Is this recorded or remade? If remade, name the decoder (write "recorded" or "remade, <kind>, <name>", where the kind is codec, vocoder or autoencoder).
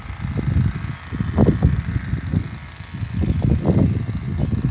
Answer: recorded